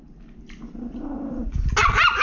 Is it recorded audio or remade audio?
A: recorded